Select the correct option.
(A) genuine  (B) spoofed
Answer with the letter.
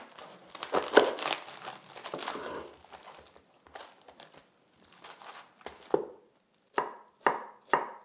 A